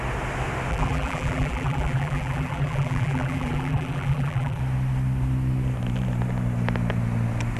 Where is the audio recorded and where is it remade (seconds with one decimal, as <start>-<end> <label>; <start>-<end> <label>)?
0.0-0.7 recorded; 0.7-4.6 remade; 4.6-7.6 recorded